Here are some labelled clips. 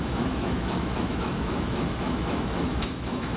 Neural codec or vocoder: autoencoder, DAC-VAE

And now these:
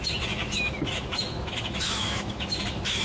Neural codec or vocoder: autoencoder, DAC-VAE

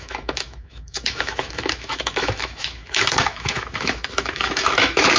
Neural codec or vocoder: autoencoder, DAC-VAE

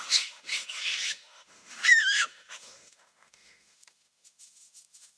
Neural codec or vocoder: autoencoder, DAC-VAE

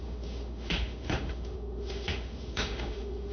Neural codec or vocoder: autoencoder, DAC-VAE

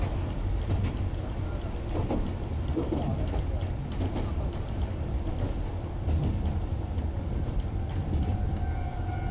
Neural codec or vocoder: none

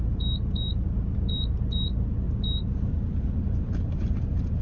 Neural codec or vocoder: none